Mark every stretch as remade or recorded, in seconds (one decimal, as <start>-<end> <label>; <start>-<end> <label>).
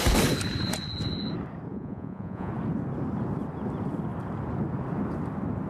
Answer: 0.0-1.7 recorded; 1.7-2.5 remade; 2.5-5.7 recorded